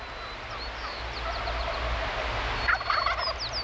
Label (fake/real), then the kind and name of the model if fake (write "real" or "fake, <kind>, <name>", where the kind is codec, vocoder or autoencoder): real